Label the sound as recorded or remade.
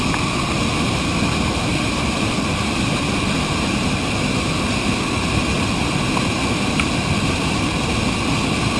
recorded